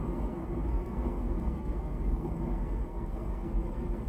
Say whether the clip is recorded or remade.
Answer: remade